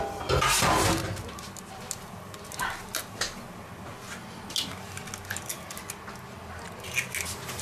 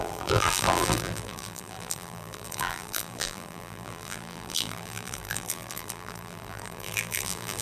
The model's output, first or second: second